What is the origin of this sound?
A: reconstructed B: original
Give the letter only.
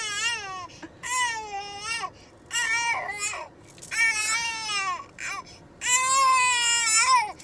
B